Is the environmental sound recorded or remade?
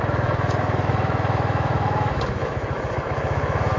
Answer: remade